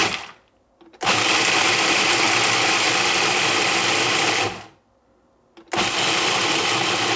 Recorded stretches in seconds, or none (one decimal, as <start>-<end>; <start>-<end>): 0.0-7.2

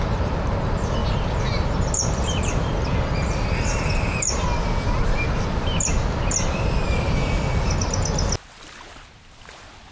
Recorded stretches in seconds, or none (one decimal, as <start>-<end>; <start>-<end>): 0.0-9.9